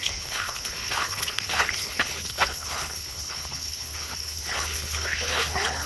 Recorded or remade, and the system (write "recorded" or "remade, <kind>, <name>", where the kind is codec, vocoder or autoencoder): remade, codec, HILCodec